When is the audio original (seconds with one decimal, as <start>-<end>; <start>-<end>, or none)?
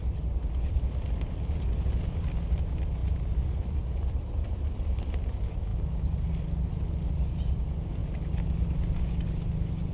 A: 0.0-9.9